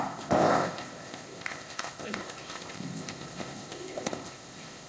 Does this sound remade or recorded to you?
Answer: remade